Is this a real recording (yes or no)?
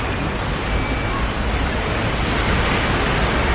yes